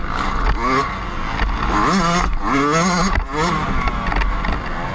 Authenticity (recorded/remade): recorded